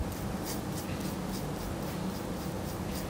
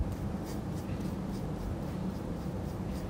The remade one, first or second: second